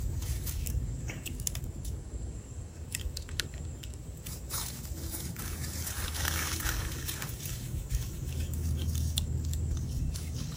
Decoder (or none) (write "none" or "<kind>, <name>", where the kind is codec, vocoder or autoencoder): codec, DAC